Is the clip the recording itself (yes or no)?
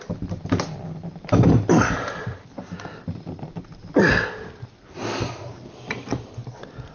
yes